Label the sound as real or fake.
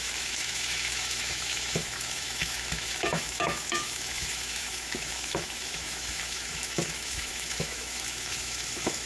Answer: fake